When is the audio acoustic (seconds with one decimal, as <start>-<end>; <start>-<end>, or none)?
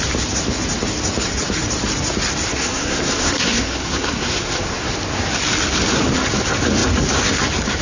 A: 0.0-2.5; 4.9-7.8